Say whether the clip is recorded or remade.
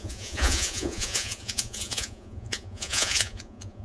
remade